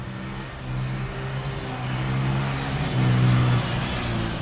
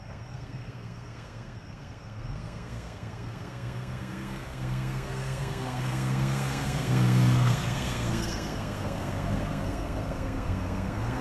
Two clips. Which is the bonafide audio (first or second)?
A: first